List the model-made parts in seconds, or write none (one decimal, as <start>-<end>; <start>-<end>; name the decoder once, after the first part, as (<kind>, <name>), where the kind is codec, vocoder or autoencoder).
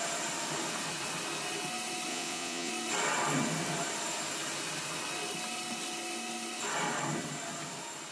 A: 2.1-2.7 (vocoder, Vocos)